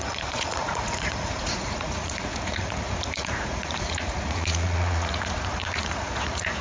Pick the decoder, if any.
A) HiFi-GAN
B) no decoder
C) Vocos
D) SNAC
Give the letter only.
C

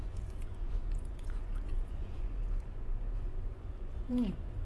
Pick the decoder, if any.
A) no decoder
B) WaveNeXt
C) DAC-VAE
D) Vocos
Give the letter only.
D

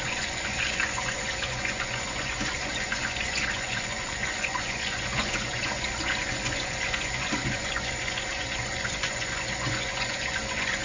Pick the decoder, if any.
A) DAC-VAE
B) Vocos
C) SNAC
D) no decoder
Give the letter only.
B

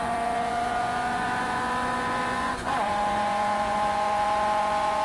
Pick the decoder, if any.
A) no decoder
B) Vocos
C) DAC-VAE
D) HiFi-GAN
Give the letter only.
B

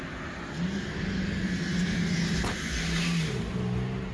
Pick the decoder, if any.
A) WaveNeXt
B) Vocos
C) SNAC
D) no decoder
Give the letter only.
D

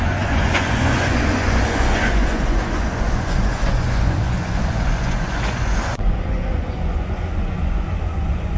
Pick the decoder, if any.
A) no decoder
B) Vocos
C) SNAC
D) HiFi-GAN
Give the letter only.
B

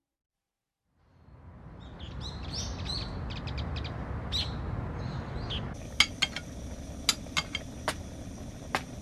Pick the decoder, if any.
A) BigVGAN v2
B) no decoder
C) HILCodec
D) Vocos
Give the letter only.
B